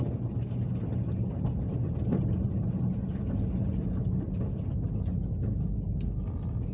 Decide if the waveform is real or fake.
real